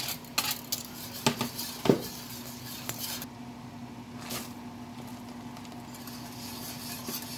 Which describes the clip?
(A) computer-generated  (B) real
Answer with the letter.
B